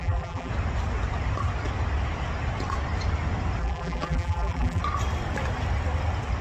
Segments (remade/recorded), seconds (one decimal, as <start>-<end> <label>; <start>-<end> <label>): 0.0-0.5 remade; 0.5-3.6 recorded; 3.6-4.8 remade; 4.8-6.4 recorded

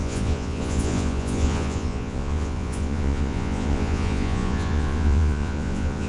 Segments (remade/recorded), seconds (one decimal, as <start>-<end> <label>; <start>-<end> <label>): 0.0-6.1 remade

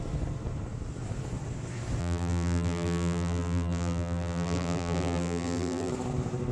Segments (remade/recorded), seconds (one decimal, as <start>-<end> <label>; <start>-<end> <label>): 0.0-2.0 recorded; 2.0-5.9 remade; 5.9-6.5 recorded

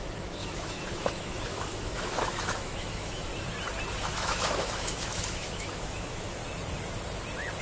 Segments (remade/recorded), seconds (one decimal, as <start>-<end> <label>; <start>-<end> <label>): 0.0-3.3 remade; 3.3-4.1 recorded; 4.1-6.4 remade; 6.4-7.6 recorded

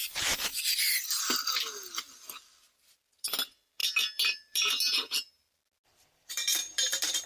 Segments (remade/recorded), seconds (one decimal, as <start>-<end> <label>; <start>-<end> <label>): 0.0-7.3 recorded